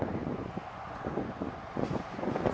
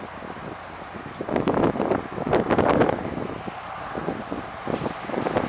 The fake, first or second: first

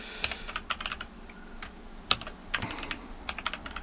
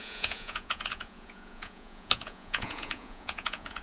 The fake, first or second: second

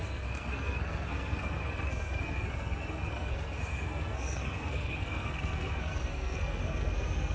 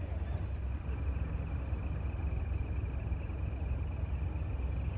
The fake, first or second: first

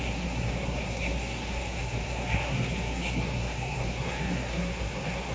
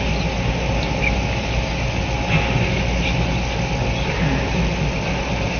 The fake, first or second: first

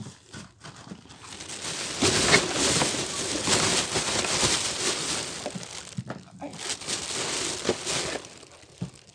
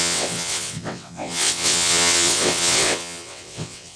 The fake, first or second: second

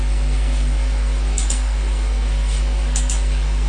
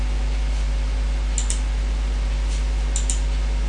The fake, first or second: first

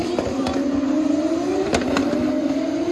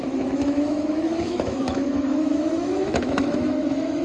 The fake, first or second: second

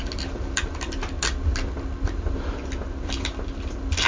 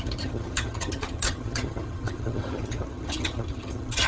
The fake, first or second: second